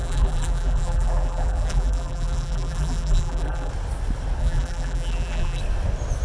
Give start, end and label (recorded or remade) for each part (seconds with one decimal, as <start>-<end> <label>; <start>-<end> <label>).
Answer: 0.0-3.7 remade; 3.7-4.4 recorded; 4.4-5.6 remade; 5.6-6.2 recorded